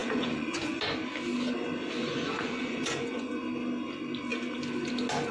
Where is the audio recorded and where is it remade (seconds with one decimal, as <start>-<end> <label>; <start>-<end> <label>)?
0.0-0.8 remade; 0.8-2.0 recorded; 2.0-3.4 remade; 3.4-5.3 recorded